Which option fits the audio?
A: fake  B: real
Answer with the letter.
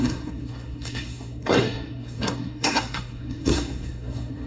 A